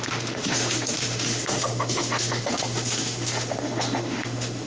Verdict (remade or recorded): remade